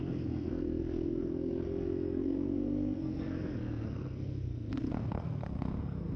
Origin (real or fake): fake